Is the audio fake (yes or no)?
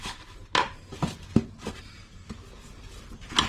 no